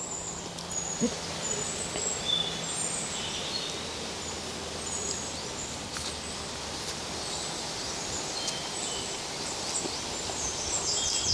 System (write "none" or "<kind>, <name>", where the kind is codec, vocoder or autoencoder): none